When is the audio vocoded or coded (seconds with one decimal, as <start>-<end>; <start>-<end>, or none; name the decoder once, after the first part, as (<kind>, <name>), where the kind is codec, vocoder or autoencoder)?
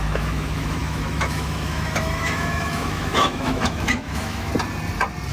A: 0.0-4.5 (autoencoder, DAC-VAE)